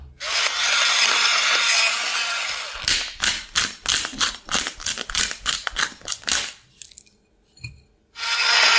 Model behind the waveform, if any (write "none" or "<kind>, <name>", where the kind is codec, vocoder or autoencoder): none